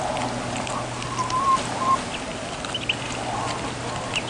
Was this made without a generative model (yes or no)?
yes